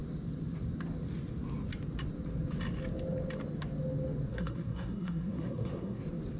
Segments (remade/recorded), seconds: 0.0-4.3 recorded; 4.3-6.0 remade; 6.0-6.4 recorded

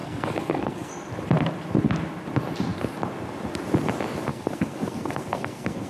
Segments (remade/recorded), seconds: 0.0-0.9 remade; 0.9-4.3 recorded; 4.3-5.9 remade

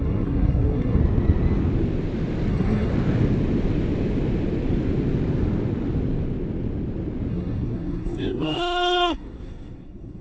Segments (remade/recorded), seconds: 0.0-1.0 remade; 1.0-2.5 recorded; 2.5-2.9 remade; 2.9-7.3 recorded; 7.3-10.2 remade

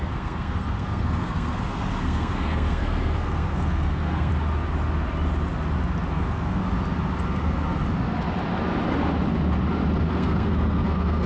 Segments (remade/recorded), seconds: 0.0-4.3 remade; 4.3-6.1 recorded; 6.1-6.6 remade; 6.6-10.1 recorded; 10.1-11.3 remade

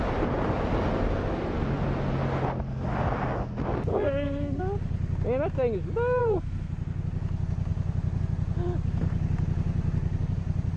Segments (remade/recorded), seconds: 0.0-3.9 recorded; 3.9-4.6 remade; 4.6-6.2 recorded; 6.2-6.7 remade; 6.7-10.8 recorded

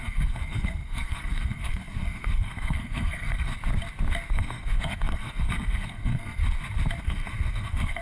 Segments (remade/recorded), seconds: 0.0-3.5 remade; 3.5-4.3 recorded; 4.3-6.4 remade; 6.4-7.0 recorded; 7.0-8.0 remade